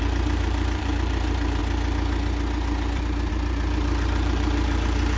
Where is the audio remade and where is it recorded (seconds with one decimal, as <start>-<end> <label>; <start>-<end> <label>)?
0.0-1.6 remade; 1.6-3.3 recorded; 3.3-5.2 remade